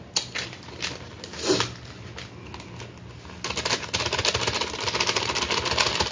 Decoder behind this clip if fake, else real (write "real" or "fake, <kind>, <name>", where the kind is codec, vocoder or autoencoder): real